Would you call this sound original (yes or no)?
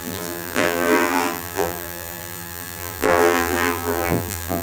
no